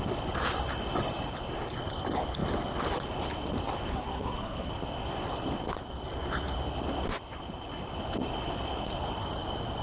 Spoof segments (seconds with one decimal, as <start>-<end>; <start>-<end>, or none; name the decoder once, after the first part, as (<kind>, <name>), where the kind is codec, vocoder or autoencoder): 3.9-4.7 (codec, SNAC)